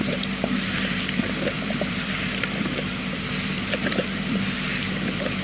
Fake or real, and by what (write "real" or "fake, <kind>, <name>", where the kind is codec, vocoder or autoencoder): fake, vocoder, BigVGAN v2